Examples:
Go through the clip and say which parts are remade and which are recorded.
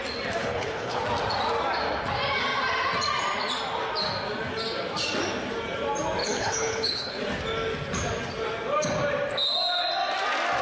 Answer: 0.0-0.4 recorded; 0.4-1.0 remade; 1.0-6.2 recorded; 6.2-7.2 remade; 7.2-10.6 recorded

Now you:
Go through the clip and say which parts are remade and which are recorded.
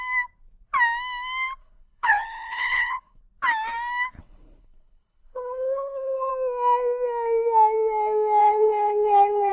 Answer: 0.0-1.6 recorded; 1.6-3.2 remade; 3.2-4.2 recorded; 4.2-6.3 remade; 6.3-8.4 recorded; 8.4-9.5 remade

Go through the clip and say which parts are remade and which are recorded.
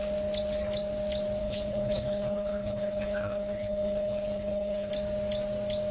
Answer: 0.0-1.4 recorded; 1.4-4.9 remade; 4.9-5.9 recorded